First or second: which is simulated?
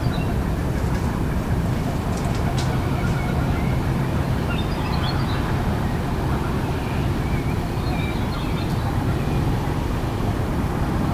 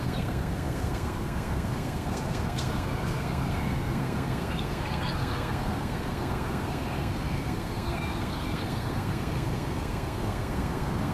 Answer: second